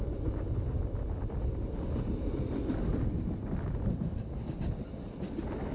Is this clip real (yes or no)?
yes